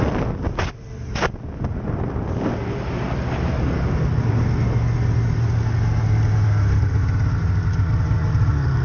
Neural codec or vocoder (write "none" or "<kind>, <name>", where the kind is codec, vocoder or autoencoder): none